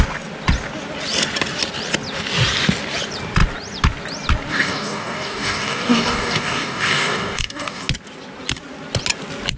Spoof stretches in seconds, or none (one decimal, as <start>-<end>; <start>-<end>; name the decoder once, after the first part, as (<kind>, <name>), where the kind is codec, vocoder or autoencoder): 4.5-7.9 (codec, DAC)